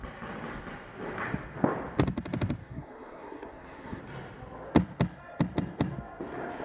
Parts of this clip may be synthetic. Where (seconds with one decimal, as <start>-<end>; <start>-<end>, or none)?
2.6-4.0